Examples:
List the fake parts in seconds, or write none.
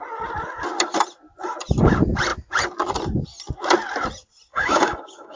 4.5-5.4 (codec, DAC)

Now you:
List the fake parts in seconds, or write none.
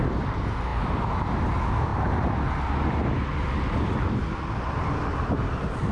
none